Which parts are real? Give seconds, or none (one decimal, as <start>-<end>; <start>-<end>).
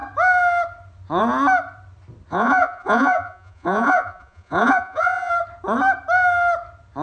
0.0-2.3; 5.3-7.0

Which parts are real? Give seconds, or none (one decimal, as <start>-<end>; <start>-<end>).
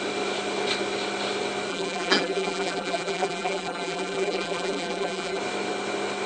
0.0-1.7; 5.4-6.3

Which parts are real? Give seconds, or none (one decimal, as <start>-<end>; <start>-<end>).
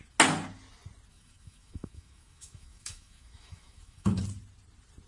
0.0-1.1; 4.2-5.1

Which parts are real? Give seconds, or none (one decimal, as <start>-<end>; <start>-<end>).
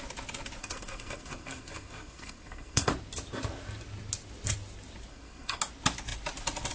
0.0-0.6; 2.9-5.1; 5.6-6.7